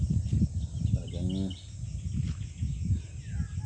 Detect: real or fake real